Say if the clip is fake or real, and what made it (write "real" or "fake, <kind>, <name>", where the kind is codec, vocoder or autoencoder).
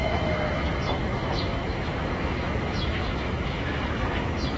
fake, autoencoder, DAC-VAE